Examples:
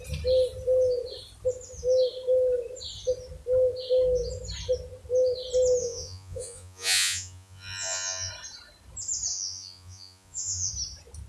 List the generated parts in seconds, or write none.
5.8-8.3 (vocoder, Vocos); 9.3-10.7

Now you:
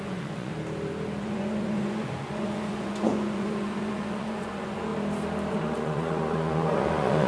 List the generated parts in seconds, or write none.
0.0-0.5 (vocoder, Vocos); 1.2-4.9; 5.5-7.3

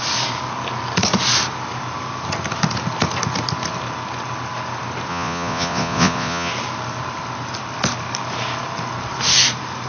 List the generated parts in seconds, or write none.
5.1-6.5 (vocoder, Vocos)

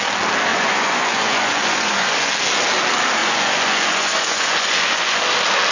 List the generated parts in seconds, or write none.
0.5-2.3 (vocoder, Vocos); 3.2-5.2

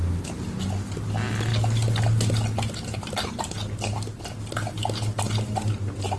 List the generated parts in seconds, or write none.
none

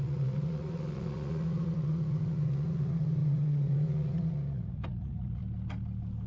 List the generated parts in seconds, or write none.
0.0-5.4 (vocoder, Vocos)

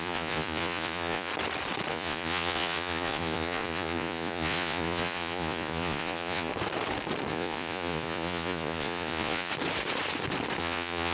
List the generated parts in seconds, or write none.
0.0-1.3 (vocoder, Vocos); 1.9-6.5; 7.3-9.5; 10.6-11.1